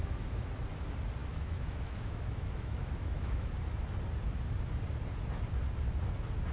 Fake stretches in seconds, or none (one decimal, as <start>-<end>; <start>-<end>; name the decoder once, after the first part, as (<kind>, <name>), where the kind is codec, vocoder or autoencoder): 0.0-0.5 (autoencoder, DAC-VAE); 1.2-3.5